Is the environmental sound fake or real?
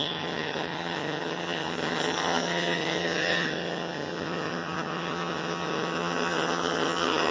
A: fake